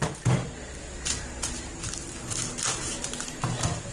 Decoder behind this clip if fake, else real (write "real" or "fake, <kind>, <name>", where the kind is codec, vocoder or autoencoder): real